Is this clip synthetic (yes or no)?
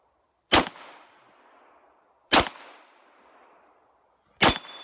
no